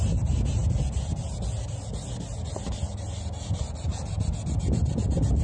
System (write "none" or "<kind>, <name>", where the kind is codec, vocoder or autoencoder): none